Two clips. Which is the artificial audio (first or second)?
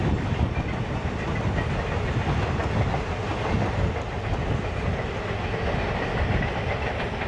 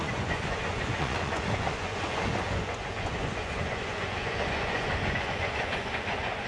second